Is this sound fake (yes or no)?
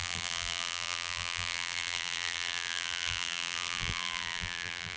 yes